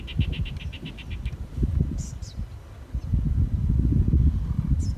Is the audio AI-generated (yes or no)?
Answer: no